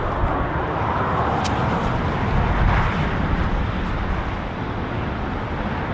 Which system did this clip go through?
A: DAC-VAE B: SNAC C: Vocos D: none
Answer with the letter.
D